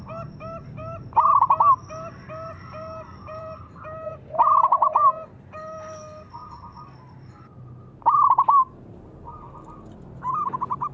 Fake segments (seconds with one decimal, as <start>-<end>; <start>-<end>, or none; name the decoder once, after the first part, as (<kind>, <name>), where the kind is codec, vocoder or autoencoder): none